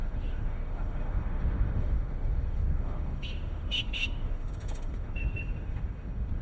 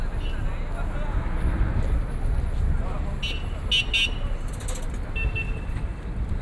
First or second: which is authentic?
second